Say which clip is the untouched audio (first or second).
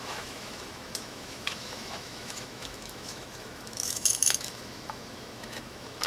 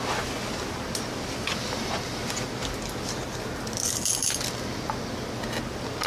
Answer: second